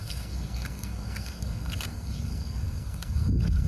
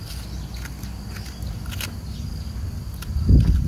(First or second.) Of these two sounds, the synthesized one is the first